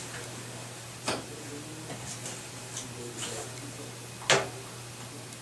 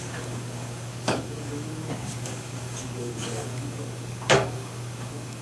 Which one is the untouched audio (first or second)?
first